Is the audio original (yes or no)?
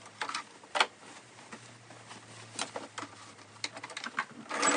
yes